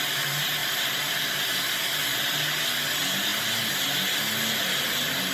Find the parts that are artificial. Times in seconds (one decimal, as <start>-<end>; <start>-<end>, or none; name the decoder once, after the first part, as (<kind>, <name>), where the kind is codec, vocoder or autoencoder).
0.6-1.4 (vocoder, BigVGAN v2)